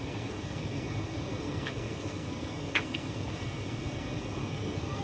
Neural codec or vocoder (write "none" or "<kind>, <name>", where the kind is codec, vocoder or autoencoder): codec, SNAC